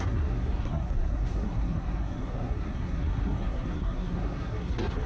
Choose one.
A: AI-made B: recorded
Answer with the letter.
A